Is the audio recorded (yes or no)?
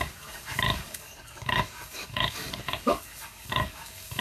no